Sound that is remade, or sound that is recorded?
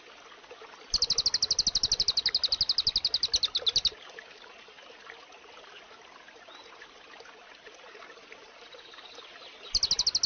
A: recorded